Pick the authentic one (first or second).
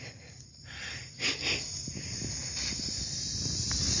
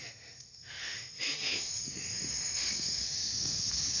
first